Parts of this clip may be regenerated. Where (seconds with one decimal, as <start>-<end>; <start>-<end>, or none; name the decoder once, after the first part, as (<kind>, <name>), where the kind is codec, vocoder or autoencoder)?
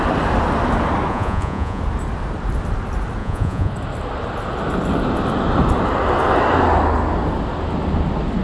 1.1-1.8 (vocoder, Vocos); 3.2-3.7